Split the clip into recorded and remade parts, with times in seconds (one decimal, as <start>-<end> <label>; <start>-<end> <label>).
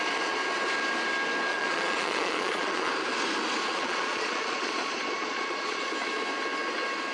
0.0-1.5 recorded; 1.5-2.9 remade; 2.9-3.7 recorded; 3.7-5.9 remade; 5.9-7.1 recorded